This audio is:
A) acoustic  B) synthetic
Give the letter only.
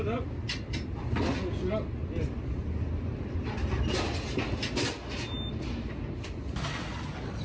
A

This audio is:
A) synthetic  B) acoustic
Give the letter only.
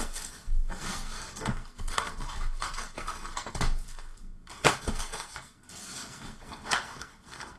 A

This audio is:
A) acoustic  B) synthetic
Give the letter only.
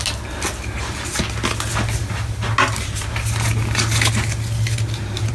A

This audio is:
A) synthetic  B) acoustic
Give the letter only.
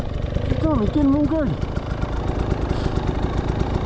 B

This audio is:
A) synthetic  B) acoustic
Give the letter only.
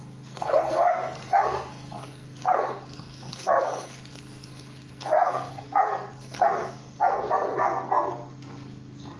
A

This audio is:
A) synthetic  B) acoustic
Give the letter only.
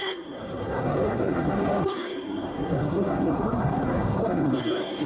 A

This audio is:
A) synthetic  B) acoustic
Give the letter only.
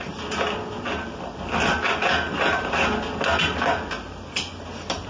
B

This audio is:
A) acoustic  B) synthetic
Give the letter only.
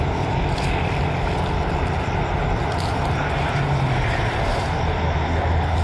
A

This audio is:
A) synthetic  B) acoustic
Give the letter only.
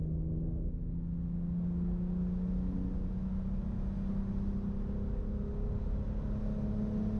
B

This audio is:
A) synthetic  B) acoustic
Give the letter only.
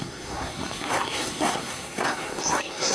A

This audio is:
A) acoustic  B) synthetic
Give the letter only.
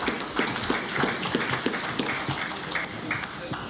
A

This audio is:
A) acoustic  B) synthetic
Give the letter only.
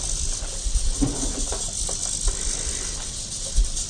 A